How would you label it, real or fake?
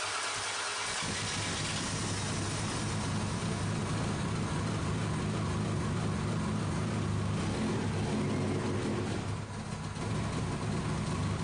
real